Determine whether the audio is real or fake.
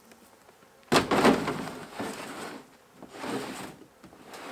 real